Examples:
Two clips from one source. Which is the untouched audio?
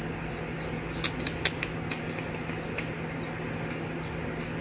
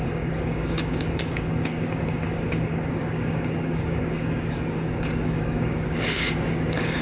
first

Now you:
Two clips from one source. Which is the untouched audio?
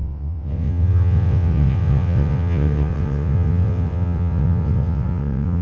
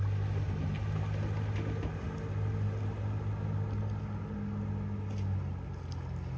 second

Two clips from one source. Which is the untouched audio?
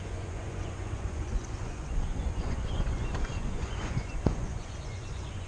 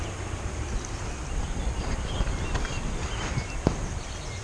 second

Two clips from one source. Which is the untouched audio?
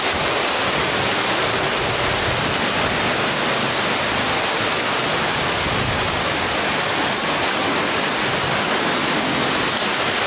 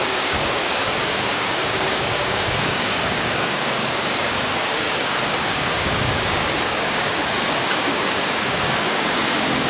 first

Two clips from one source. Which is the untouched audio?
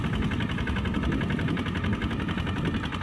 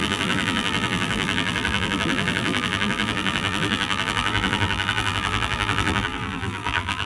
first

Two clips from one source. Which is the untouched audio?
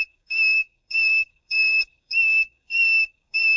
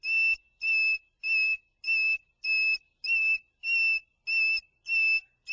second